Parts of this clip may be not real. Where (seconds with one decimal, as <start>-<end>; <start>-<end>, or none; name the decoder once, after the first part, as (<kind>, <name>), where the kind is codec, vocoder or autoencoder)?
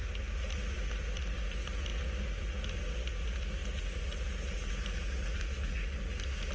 none